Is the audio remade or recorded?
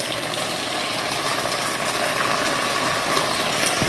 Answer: recorded